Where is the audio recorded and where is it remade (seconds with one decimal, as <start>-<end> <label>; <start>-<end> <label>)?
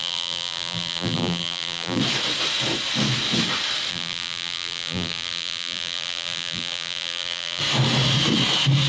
0.0-2.0 remade; 2.0-3.9 recorded; 3.9-7.6 remade; 7.6-8.9 recorded